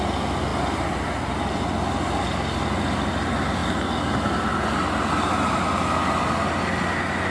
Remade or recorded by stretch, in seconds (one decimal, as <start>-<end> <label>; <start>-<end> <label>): 0.0-7.3 recorded